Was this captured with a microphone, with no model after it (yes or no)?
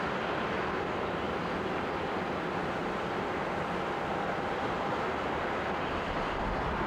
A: yes